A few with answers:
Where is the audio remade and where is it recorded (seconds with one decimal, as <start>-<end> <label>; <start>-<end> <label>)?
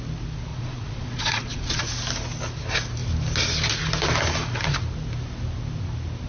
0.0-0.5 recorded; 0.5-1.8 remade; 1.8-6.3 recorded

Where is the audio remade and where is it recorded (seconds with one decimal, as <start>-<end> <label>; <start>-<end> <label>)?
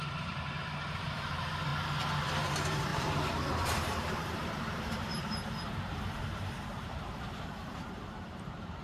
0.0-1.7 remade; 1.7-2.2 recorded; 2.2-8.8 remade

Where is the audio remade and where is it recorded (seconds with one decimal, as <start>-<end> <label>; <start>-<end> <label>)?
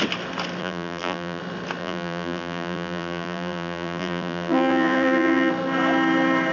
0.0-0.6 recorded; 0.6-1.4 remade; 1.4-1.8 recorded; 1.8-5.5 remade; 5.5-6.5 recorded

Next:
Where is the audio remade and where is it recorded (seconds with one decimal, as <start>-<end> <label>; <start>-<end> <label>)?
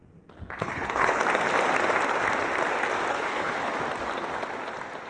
0.0-0.6 recorded; 0.6-1.2 remade; 1.2-3.1 recorded; 3.1-3.7 remade; 3.7-5.1 recorded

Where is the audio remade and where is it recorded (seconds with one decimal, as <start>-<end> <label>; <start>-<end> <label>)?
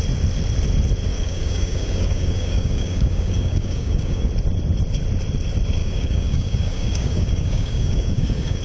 0.0-1.1 recorded; 1.1-4.3 remade; 4.3-5.8 recorded; 5.8-8.6 remade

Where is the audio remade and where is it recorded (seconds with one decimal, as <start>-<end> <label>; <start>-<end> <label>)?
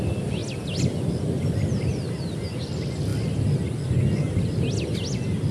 0.0-5.5 recorded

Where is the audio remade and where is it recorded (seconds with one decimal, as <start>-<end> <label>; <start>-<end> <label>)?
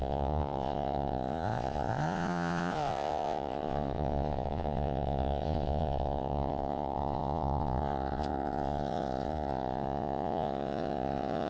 0.0-11.5 remade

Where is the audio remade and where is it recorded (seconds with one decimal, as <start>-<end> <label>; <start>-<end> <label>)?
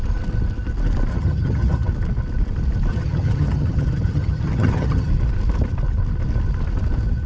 0.0-1.1 recorded; 1.1-1.9 remade; 1.9-2.9 recorded; 2.9-5.1 remade; 5.1-7.3 recorded